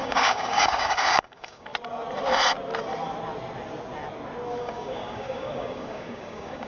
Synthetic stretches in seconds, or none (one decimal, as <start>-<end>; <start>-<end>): 0.0-1.7; 4.6-6.7